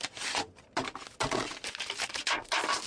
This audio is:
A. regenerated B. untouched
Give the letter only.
B